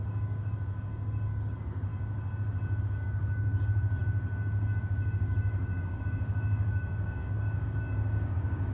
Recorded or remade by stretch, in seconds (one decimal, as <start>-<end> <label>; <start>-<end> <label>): 0.0-1.9 remade; 1.9-2.8 recorded; 2.8-4.0 remade; 4.0-4.8 recorded; 4.8-8.7 remade